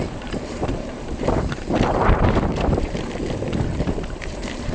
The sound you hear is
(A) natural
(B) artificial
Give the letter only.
B